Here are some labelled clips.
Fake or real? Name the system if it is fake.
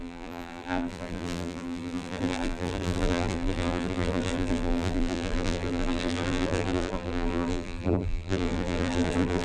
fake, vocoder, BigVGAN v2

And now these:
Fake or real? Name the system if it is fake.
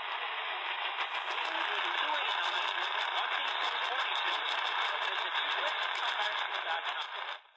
real